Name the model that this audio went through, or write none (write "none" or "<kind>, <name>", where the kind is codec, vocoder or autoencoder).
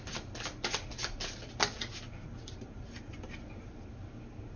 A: none